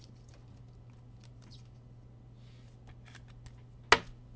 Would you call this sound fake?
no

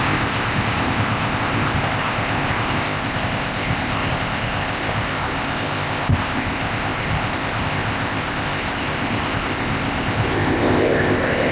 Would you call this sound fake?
yes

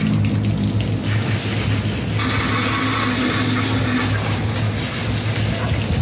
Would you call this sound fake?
no